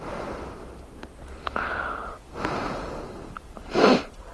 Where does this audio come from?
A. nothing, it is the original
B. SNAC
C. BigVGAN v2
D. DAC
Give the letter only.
A